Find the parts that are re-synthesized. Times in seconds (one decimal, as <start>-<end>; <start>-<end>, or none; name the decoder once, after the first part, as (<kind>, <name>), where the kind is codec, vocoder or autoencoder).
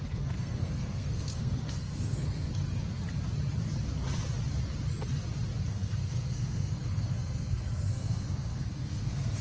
0.0-2.5 (codec, SNAC); 5.7-9.4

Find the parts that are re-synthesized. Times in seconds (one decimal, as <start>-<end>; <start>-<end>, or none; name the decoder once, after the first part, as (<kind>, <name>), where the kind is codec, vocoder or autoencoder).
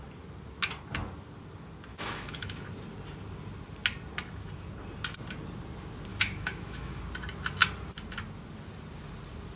1.9-2.6 (autoencoder, DAC-VAE); 6.1-7.0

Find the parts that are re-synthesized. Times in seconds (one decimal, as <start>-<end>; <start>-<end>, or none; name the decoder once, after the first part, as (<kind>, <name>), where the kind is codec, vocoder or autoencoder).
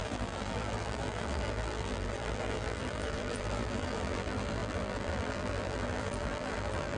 0.0-7.0 (vocoder, BigVGAN v2)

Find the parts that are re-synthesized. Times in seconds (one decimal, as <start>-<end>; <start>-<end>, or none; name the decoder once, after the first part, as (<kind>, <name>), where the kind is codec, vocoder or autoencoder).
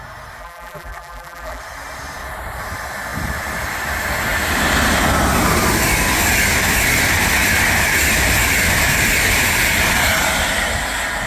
0.4-1.6 (vocoder, BigVGAN v2)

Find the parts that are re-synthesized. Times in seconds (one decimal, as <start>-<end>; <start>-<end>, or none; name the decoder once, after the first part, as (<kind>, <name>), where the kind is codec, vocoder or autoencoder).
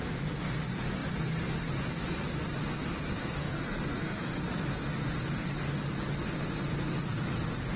3.4-4.4 (codec, SNAC)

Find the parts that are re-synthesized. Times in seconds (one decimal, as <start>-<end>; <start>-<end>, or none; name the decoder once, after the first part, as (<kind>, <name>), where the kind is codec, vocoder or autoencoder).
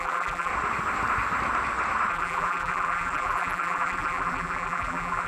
0.0-0.5 (vocoder, BigVGAN v2); 2.1-5.3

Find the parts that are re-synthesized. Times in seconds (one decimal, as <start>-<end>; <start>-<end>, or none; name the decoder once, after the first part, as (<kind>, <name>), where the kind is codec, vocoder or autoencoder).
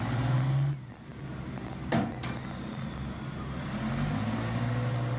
none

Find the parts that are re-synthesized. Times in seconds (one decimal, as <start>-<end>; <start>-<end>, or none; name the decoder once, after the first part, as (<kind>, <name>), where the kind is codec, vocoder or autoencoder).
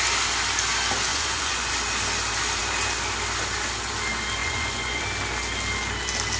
1.1-1.7 (vocoder, Vocos); 4.4-5.0